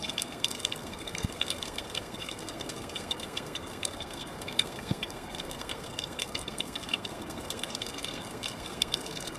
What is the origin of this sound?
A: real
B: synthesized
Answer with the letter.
B